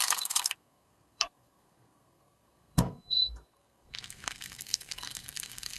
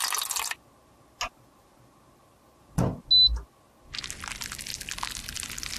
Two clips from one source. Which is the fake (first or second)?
first